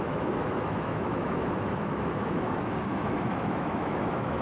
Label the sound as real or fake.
fake